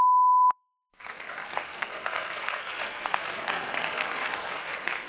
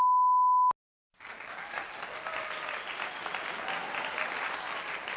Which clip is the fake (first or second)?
first